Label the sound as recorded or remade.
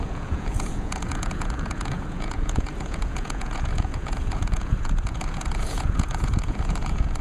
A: remade